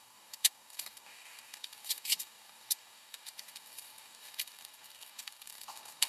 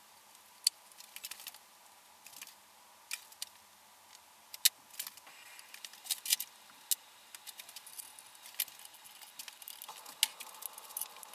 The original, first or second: second